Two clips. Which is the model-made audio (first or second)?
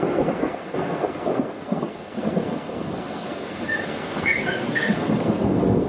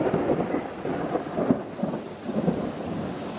first